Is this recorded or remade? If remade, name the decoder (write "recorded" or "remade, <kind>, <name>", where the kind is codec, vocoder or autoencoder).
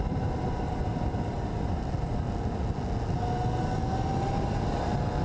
recorded